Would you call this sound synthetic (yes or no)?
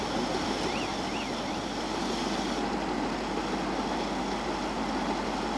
no